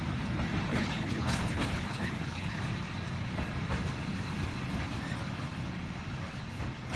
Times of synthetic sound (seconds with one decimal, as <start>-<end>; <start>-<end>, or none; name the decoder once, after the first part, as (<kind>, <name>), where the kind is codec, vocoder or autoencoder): 0.7-2.6 (codec, HILCodec)